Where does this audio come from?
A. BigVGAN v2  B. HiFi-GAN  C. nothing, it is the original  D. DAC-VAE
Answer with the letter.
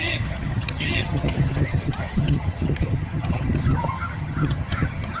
B